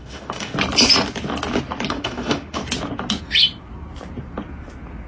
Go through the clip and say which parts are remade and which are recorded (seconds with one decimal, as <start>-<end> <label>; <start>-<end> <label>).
0.0-0.5 remade; 0.5-1.9 recorded; 1.9-2.6 remade; 2.6-5.1 recorded